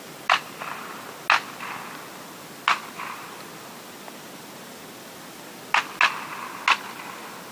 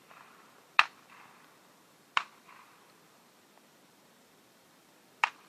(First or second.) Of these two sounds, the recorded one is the first